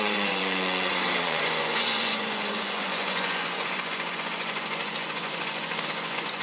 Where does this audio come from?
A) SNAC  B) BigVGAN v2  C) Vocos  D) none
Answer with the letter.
C